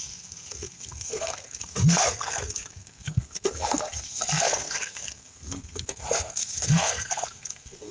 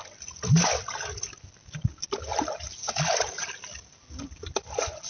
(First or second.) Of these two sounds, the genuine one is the second